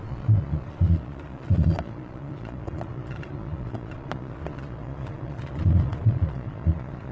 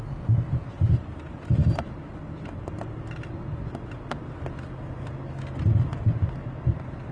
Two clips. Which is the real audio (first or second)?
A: second